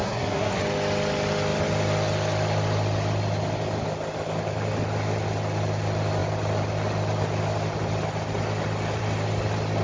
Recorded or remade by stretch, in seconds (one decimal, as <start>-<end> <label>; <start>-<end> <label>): 0.0-0.6 remade; 0.6-9.8 recorded